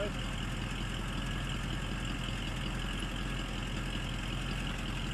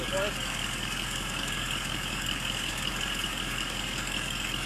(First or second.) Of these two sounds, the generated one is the second